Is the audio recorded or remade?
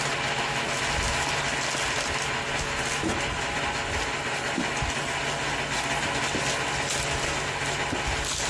recorded